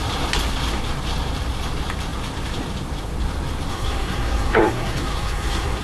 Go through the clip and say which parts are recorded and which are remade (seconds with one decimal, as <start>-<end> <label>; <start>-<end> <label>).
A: 0.0-3.7 recorded; 3.7-5.8 remade